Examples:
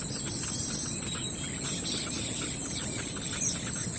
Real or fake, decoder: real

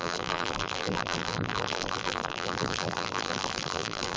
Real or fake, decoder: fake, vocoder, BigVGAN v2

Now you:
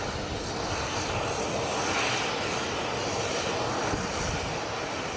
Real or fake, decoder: real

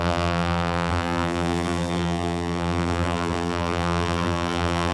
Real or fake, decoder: fake, vocoder, BigVGAN v2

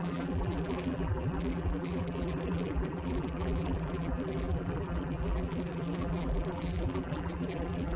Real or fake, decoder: fake, vocoder, BigVGAN v2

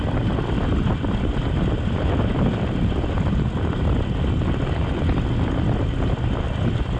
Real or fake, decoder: real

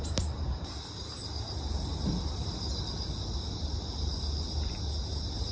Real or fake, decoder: real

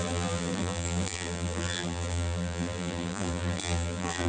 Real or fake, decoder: fake, vocoder, BigVGAN v2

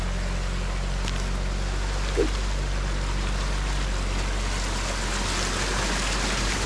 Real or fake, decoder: real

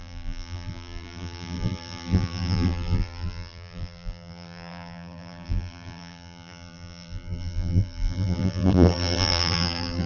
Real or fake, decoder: fake, vocoder, BigVGAN v2